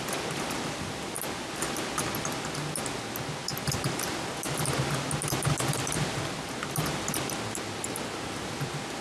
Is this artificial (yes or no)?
no